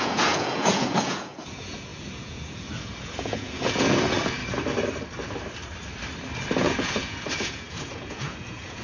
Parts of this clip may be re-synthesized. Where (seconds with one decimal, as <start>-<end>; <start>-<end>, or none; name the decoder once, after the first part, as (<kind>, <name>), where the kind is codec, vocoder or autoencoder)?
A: 0.0-4.4 (vocoder, Vocos); 6.6-8.8